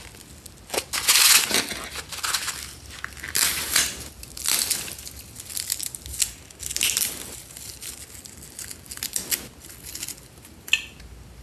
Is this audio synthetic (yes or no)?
no